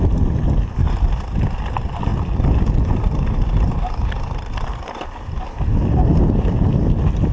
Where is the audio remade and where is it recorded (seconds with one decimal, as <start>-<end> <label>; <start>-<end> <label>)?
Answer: 0.0-7.3 recorded